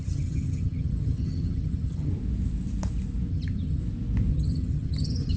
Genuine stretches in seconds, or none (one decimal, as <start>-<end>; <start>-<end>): 2.1-3.3; 3.8-4.3